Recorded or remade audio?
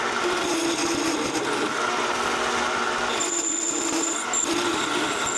recorded